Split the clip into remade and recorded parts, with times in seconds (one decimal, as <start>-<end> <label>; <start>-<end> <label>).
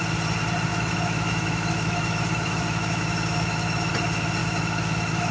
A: 0.0-0.7 recorded; 0.7-3.9 remade; 3.9-4.4 recorded; 4.4-5.3 remade